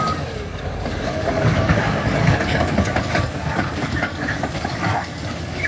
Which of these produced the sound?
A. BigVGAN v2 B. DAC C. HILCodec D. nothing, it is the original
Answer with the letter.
B